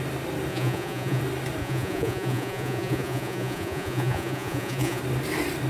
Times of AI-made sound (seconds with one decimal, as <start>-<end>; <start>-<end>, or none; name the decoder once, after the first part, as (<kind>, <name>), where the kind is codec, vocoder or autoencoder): 0.5-1.2 (vocoder, Vocos); 1.6-5.0